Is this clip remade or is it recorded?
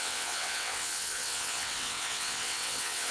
remade